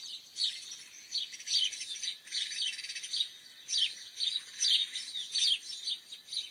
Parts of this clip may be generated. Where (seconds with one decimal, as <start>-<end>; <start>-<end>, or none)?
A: none